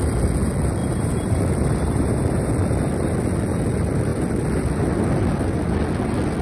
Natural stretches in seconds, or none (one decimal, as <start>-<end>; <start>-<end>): 0.0-0.8; 2.5-6.4